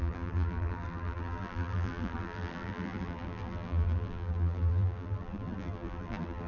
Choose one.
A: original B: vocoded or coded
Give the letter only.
B